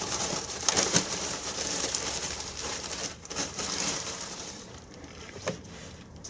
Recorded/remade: remade